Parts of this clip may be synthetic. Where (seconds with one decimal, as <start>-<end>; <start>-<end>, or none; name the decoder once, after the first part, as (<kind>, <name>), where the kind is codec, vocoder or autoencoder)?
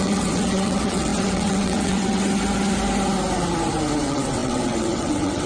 0.0-2.2 (vocoder, WaveNeXt); 4.0-5.5